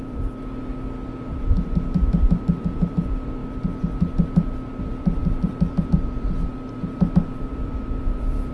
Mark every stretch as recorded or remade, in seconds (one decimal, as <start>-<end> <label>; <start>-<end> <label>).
0.0-0.7 remade; 0.7-1.3 recorded; 1.3-3.4 remade; 3.4-4.8 recorded; 4.8-8.5 remade